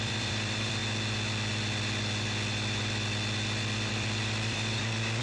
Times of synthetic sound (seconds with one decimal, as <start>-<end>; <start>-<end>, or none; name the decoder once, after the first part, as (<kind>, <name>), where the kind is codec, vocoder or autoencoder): 0.0-0.8 (vocoder, BigVGAN v2); 3.9-5.2